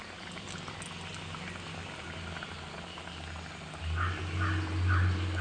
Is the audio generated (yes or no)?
no